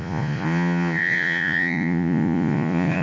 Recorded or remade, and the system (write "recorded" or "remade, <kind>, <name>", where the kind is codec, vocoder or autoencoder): remade, vocoder, Vocos